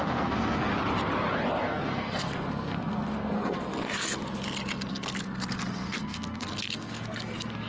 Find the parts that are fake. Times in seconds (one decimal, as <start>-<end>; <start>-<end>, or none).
0.0-0.7; 1.6-4.2; 4.9-7.7